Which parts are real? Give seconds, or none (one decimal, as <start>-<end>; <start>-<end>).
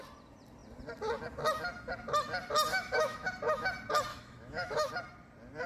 0.0-2.7; 3.3-4.1; 4.9-5.7